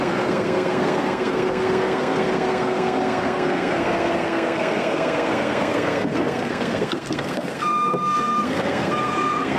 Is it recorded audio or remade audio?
remade